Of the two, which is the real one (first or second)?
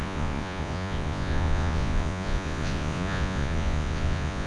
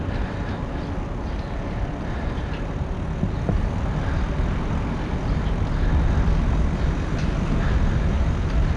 second